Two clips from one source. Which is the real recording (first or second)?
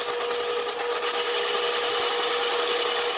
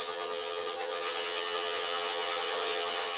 first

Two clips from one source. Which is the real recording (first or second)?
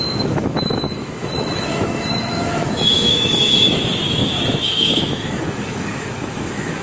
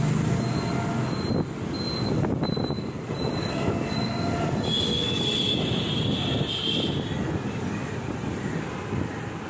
second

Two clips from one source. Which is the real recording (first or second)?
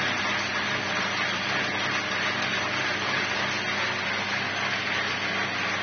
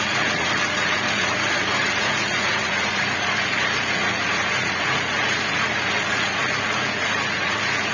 first